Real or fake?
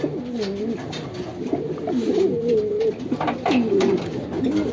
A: real